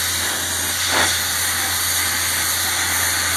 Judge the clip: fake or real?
real